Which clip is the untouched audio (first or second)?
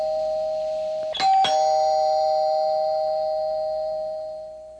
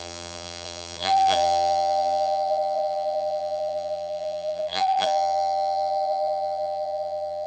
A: first